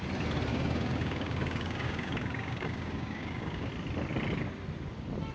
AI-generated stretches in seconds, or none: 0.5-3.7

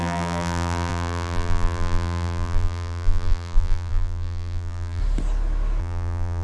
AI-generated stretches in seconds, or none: 0.0-5.0; 5.8-6.4

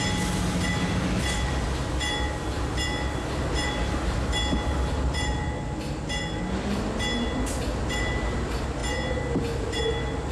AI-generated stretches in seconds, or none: none